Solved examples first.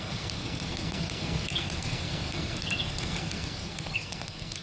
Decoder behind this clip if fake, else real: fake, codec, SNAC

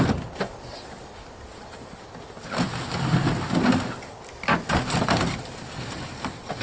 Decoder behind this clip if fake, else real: real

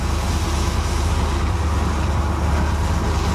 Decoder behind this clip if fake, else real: real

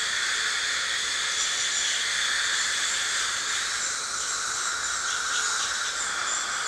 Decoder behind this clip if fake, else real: real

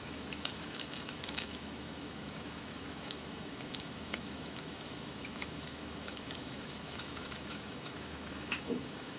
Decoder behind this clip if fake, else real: fake, autoencoder, DAC-VAE